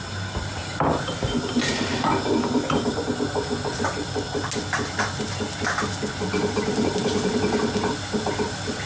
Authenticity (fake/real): real